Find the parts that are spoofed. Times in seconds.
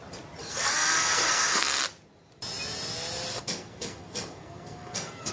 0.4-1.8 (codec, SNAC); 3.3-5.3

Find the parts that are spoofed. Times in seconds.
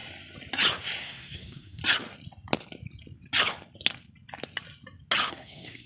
1.0-1.8 (codec, SNAC); 5.3-5.9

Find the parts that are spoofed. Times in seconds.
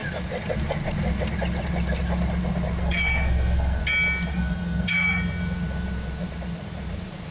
2.8-3.8 (codec, SNAC); 4.3-5.2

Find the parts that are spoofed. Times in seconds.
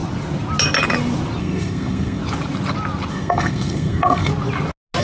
1.4-2.2 (codec, SNAC); 3.1-4.3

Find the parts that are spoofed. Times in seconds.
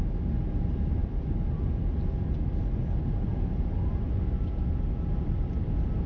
none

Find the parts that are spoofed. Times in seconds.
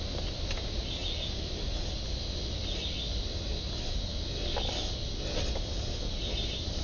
none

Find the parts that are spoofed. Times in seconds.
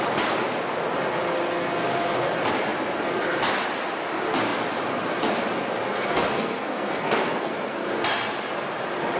5.8-7.9 (codec, SNAC)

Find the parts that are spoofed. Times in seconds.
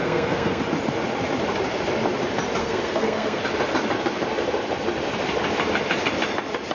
0.0-0.6 (codec, SNAC); 2.6-3.4